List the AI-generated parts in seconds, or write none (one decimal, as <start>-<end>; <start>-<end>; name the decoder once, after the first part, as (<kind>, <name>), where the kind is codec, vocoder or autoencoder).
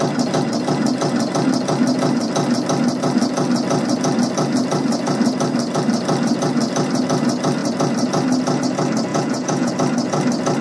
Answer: 9.1-9.7 (vocoder, Vocos)